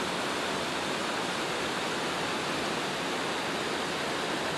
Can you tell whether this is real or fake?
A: real